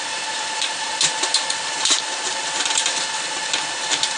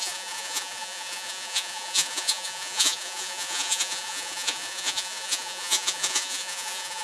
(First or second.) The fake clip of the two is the second